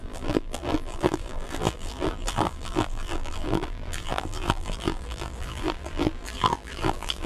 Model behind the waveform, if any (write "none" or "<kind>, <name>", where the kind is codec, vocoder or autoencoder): vocoder, BigVGAN v2